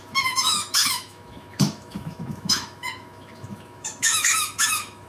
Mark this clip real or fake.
fake